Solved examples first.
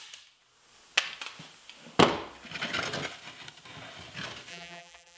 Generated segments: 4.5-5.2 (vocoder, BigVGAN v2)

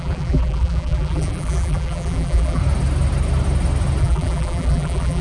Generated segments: 0.0-2.6 (vocoder, BigVGAN v2); 4.0-5.2